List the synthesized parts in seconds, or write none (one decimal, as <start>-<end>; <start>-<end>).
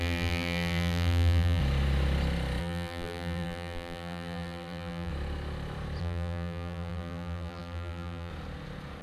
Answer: 0.0-1.6; 2.6-5.1; 6.0-8.3